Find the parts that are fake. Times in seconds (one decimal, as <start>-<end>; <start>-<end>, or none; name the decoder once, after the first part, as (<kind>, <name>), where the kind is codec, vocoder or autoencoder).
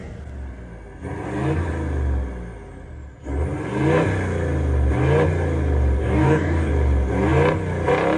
6.0-6.7 (codec, DAC)